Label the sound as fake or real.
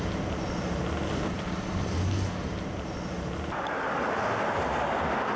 real